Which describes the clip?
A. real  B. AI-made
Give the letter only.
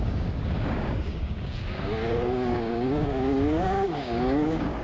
B